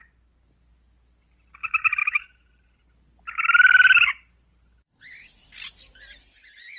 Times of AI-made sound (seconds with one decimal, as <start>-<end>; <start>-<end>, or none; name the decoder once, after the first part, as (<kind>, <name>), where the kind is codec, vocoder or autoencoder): 2.0-2.5 (autoencoder, DAC-VAE)